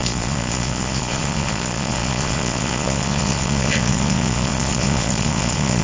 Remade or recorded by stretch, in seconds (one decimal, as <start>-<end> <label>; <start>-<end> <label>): 0.0-5.8 remade